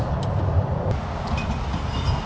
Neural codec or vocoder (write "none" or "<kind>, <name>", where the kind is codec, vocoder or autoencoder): none